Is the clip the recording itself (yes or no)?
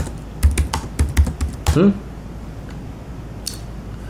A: yes